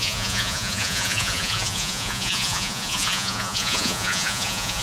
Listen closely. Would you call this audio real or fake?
fake